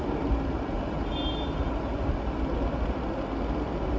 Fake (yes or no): no